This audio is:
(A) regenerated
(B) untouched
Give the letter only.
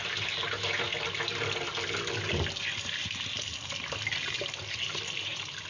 B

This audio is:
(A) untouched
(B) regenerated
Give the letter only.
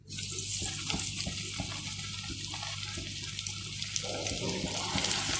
A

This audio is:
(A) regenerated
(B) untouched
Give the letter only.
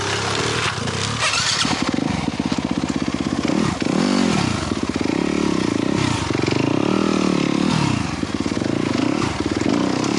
B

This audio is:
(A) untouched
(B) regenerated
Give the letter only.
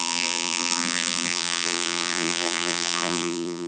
B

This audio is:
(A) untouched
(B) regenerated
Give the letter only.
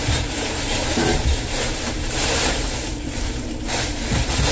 B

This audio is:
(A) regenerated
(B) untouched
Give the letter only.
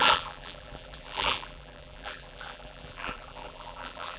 A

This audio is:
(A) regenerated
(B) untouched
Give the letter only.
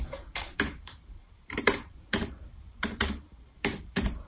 A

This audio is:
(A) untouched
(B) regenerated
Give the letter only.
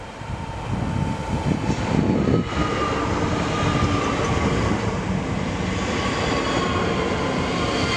A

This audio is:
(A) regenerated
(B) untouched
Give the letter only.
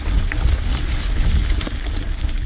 B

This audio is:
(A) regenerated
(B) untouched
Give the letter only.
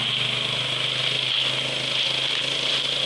B